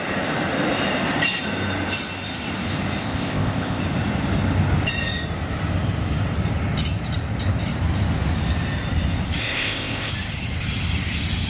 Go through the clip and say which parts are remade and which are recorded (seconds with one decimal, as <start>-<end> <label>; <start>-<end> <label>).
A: 0.0-3.0 recorded; 3.0-3.8 remade; 3.8-9.4 recorded; 9.4-10.1 remade; 10.1-11.5 recorded